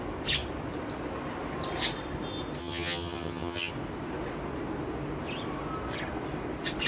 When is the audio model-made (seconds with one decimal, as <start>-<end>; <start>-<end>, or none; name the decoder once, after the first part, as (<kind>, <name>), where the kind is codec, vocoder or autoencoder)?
2.6-3.7 (vocoder, HiFi-GAN)